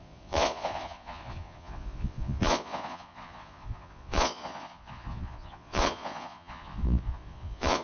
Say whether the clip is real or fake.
fake